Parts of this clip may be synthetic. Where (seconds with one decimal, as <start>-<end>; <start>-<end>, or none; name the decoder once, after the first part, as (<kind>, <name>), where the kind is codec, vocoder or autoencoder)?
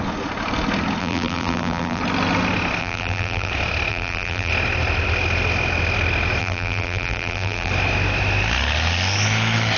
1.0-2.0 (vocoder, BigVGAN v2); 2.8-3.5; 3.9-4.5; 6.4-7.7